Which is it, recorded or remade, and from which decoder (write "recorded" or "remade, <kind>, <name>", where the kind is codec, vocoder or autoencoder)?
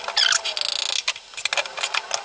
recorded